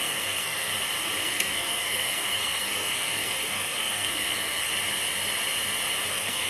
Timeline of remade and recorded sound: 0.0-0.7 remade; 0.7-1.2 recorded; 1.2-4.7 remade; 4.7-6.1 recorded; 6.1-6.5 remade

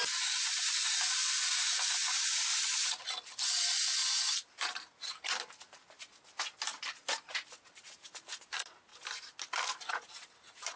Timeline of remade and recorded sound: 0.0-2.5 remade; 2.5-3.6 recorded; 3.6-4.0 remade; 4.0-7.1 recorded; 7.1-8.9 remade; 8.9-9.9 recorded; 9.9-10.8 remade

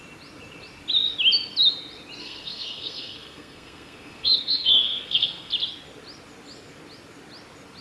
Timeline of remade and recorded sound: 0.0-2.2 recorded; 2.2-5.5 remade; 5.5-7.8 recorded

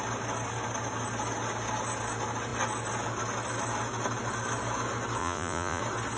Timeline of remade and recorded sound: 0.0-5.2 recorded; 5.2-5.8 remade; 5.8-6.2 recorded

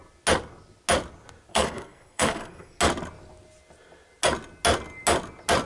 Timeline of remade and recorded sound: 0.0-1.5 recorded; 1.5-2.8 remade; 2.8-5.7 recorded

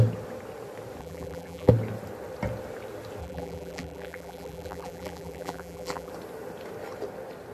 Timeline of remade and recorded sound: 0.0-1.0 recorded; 1.0-1.7 remade; 1.7-3.2 recorded; 3.2-6.1 remade; 6.1-7.5 recorded